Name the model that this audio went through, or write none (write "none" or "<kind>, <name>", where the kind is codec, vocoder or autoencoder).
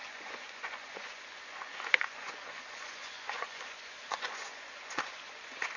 vocoder, Vocos